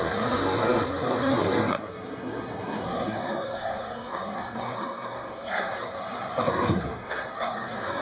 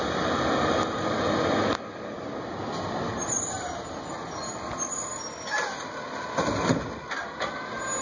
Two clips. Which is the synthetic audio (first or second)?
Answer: first